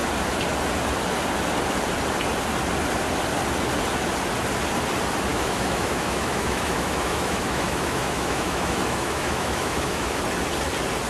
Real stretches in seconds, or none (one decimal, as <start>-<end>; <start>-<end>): 0.0-5.3; 10.2-11.1